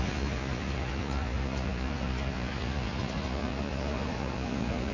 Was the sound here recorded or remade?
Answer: remade